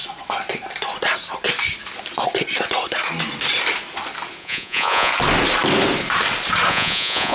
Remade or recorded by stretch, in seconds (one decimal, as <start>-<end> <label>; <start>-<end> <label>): 0.0-4.4 recorded; 4.4-5.1 remade; 5.1-6.7 recorded; 6.7-7.3 remade